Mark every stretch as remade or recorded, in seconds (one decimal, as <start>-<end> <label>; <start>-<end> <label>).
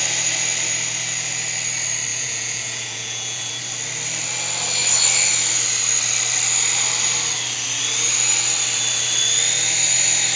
0.0-2.1 recorded; 2.1-3.5 remade; 3.5-10.4 recorded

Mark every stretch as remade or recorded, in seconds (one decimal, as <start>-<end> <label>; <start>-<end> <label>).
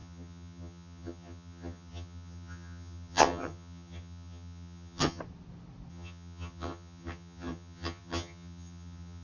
0.0-5.2 remade; 5.2-5.9 recorded; 5.9-9.2 remade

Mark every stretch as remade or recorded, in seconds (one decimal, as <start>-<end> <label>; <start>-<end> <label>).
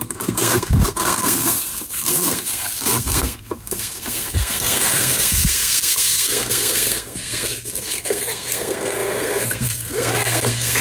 0.0-10.8 remade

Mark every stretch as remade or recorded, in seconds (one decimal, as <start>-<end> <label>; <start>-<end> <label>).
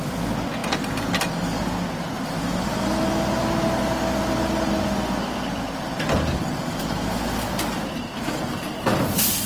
0.0-9.5 recorded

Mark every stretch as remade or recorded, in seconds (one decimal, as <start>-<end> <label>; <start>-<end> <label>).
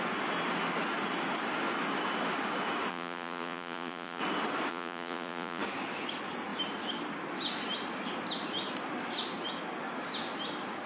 0.0-2.9 recorded; 2.9-4.2 remade; 4.2-4.7 recorded; 4.7-5.6 remade; 5.6-10.9 recorded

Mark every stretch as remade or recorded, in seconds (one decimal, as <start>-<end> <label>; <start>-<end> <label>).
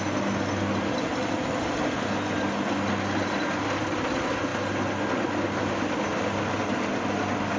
0.0-7.6 recorded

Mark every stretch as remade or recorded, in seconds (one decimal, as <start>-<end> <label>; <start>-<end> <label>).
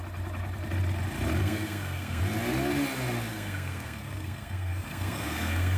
0.0-1.4 recorded; 1.4-2.2 remade; 2.2-3.3 recorded; 3.3-5.8 remade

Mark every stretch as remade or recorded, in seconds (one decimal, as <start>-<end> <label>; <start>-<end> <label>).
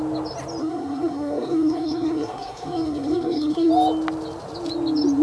0.0-0.6 recorded; 0.6-3.7 remade; 3.7-5.2 recorded